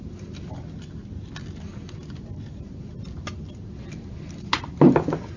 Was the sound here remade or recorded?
recorded